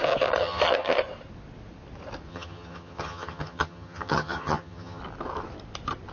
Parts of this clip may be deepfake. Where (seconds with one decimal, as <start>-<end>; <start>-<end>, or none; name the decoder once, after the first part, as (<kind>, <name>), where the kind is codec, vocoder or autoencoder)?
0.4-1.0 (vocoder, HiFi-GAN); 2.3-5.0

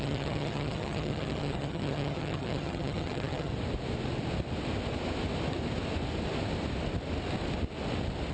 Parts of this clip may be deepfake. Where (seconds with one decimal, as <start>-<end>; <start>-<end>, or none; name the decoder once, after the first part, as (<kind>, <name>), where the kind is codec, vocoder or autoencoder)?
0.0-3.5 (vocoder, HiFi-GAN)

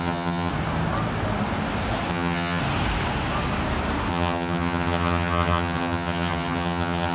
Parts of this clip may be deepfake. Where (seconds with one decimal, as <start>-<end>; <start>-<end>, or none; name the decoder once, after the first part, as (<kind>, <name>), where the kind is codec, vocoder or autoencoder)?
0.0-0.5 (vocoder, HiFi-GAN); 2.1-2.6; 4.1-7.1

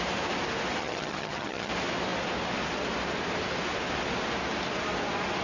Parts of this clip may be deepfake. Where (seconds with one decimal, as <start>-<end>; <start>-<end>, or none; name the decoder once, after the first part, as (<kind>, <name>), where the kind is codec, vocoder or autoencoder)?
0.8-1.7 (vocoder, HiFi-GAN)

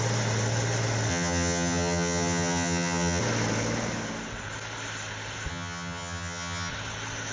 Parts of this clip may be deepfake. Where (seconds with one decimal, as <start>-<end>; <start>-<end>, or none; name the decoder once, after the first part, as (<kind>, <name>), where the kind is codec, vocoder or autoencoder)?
1.1-3.2 (vocoder, HiFi-GAN); 5.5-6.7